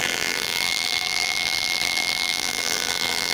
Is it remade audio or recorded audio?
remade